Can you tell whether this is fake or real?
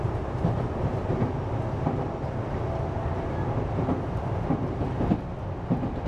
real